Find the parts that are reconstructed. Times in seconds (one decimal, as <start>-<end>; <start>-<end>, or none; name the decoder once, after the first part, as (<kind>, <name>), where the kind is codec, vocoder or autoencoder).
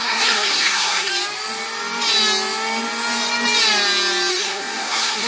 0.0-1.1 (codec, SNAC); 4.3-5.3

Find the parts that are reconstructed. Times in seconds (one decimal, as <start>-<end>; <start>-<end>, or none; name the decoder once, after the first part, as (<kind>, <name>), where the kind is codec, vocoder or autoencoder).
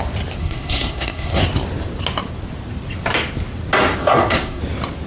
0.4-1.4 (codec, SNAC); 4.0-4.6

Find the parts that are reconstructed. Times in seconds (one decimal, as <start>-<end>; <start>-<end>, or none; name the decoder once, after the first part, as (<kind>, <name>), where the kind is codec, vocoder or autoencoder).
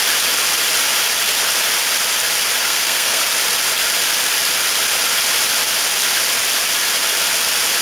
2.6-3.2 (codec, SNAC)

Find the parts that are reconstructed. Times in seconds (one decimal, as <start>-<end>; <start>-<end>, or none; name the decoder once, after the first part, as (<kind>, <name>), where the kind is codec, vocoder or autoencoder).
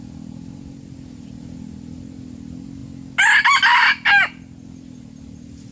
none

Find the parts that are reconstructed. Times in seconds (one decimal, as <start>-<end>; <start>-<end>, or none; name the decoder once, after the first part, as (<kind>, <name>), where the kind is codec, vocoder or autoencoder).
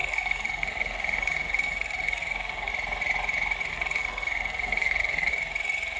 0.0-2.7 (codec, SNAC); 3.7-5.3